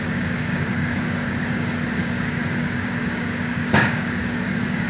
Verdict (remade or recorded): remade